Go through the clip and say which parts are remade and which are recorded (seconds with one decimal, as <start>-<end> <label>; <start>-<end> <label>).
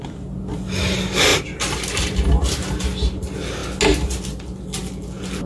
0.0-5.5 recorded